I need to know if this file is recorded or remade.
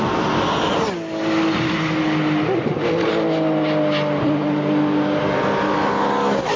recorded